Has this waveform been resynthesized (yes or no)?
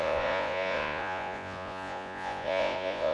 yes